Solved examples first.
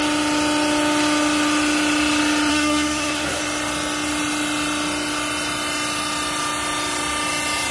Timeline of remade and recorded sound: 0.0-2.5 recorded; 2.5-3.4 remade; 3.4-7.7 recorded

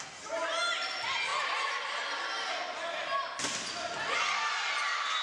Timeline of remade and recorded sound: 0.0-1.3 recorded; 1.3-2.2 remade; 2.2-5.2 recorded

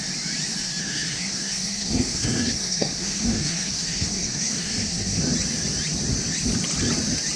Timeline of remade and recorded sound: 0.0-0.8 recorded; 0.8-5.2 remade; 5.2-7.4 recorded